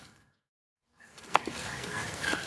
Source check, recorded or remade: remade